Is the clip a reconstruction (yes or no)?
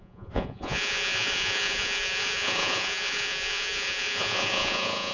yes